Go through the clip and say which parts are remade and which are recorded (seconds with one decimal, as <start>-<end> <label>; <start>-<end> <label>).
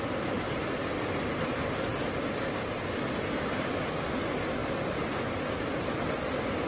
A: 0.0-6.7 recorded